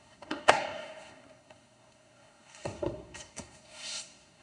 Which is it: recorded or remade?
remade